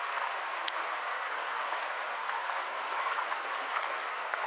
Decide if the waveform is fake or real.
fake